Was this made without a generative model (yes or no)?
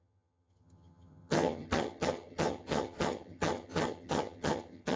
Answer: no